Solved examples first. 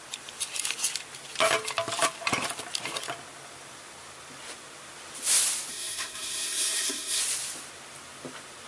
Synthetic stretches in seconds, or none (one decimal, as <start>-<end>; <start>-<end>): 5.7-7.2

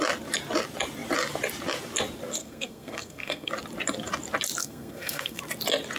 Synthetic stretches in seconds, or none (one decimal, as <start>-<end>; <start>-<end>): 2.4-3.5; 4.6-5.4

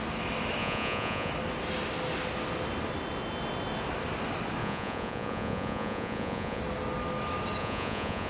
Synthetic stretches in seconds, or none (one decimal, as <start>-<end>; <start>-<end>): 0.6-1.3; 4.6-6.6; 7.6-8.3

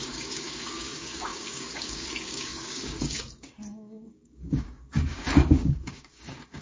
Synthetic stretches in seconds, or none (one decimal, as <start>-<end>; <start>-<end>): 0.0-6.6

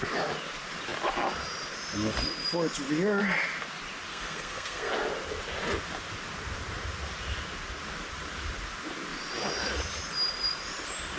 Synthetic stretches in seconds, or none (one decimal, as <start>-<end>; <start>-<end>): 4.1-4.9